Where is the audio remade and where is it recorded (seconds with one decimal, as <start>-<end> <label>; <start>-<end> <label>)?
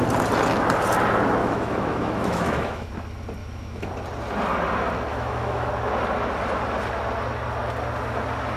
0.0-1.4 recorded; 1.4-2.9 remade; 2.9-3.4 recorded; 3.4-3.9 remade; 3.9-5.1 recorded; 5.1-5.7 remade; 5.7-8.6 recorded